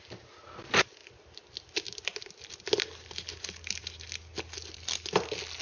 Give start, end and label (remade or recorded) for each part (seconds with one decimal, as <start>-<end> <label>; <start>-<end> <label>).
0.0-5.6 recorded